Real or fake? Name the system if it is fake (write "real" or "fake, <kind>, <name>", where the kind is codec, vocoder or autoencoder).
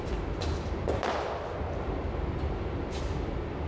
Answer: fake, vocoder, BigVGAN v2